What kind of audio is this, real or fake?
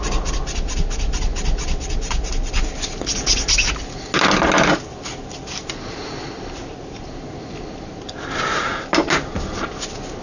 real